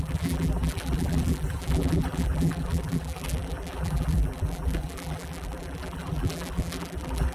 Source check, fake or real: fake